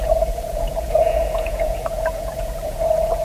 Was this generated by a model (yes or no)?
yes